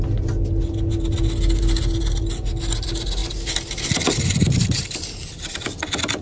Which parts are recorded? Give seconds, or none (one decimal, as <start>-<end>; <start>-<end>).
0.0-6.2